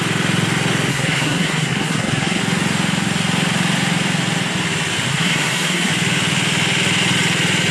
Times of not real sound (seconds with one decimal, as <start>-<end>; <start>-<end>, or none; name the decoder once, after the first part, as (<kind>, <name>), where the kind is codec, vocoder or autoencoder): 0.9-2.4 (codec, SNAC); 5.1-5.9